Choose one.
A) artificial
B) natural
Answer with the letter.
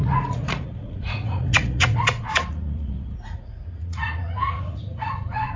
A